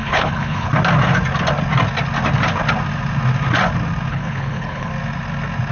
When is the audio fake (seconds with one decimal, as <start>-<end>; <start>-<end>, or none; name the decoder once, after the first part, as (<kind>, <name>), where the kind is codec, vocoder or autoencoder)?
0.0-0.7 (codec, HILCodec); 4.1-4.9